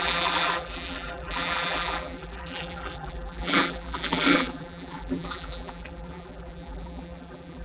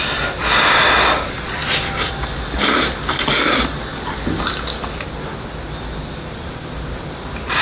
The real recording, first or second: second